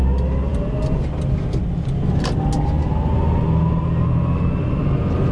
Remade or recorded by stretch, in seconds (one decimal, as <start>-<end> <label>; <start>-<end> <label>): 0.0-5.3 recorded